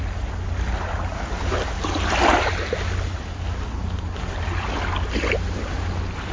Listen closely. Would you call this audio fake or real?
real